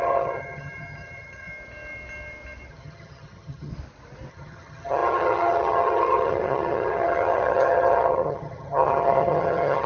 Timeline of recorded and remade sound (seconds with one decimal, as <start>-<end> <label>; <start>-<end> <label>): 0.0-1.5 remade; 1.5-2.7 recorded; 2.7-3.7 remade; 3.7-4.3 recorded; 4.3-9.9 remade